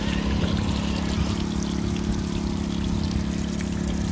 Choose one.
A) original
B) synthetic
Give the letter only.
A